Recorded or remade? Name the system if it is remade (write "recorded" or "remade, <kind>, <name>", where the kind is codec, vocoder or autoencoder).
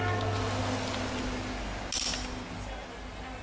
recorded